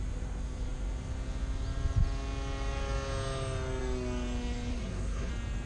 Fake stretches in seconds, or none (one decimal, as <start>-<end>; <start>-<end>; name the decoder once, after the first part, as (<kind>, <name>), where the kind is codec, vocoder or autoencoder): 4.7-5.3 (codec, SNAC)